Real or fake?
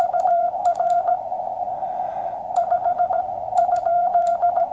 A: fake